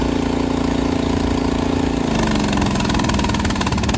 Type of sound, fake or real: real